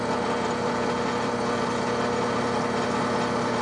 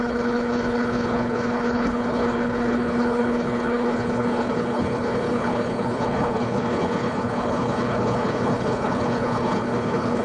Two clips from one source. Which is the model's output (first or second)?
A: second